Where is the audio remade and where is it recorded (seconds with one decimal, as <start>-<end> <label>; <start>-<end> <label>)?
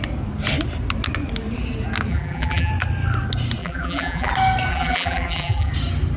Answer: 0.0-2.1 recorded; 2.1-2.7 remade; 2.7-3.6 recorded; 3.6-4.3 remade; 4.3-4.7 recorded; 4.7-5.7 remade; 5.7-6.2 recorded